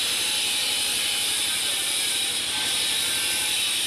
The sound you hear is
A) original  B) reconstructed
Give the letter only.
B